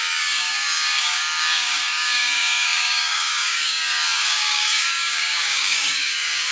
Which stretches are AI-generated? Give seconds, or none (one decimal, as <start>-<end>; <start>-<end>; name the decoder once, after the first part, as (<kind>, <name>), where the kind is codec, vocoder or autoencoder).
0.0-6.5 (codec, DAC)